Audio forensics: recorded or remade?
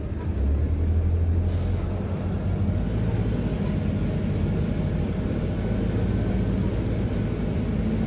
recorded